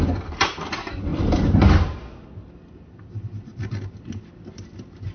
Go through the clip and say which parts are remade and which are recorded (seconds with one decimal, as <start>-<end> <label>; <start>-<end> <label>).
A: 0.0-5.1 recorded